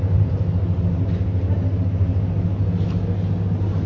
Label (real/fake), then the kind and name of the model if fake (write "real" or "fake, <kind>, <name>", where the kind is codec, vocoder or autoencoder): real